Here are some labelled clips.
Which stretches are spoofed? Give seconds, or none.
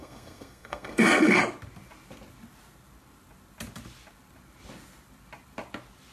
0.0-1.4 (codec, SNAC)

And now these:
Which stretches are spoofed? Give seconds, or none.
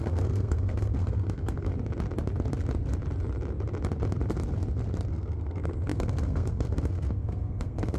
0.0-1.7 (codec, SNAC); 5.1-8.0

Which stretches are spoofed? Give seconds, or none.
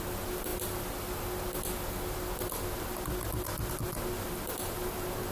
none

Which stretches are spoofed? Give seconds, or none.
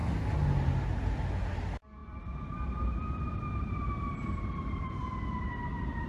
1.1-6.1 (vocoder, BigVGAN v2)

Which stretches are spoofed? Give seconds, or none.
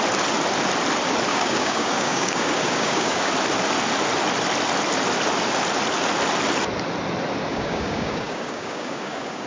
1.3-3.3 (codec, DAC); 7.5-9.5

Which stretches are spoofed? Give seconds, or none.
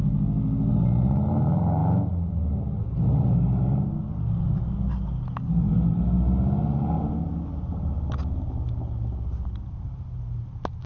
none